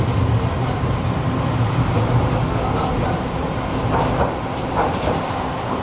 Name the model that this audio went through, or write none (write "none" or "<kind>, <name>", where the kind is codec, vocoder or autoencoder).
none